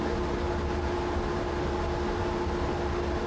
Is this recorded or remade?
recorded